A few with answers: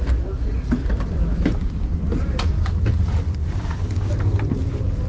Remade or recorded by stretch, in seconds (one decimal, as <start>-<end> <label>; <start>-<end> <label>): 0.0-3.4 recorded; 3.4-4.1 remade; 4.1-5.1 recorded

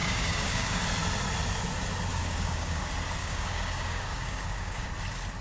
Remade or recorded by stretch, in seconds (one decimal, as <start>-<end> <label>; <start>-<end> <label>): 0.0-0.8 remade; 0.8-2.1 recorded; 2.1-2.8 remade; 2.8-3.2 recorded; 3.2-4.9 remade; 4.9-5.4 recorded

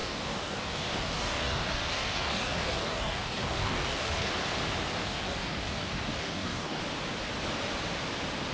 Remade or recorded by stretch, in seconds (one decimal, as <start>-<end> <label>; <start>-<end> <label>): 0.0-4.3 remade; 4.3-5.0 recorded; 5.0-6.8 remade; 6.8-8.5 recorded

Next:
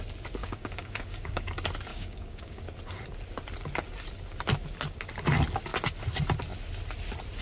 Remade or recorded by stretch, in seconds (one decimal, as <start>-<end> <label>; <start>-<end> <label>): 0.0-0.4 recorded; 0.4-1.5 remade; 1.5-1.9 recorded; 1.9-2.6 remade; 2.6-7.4 recorded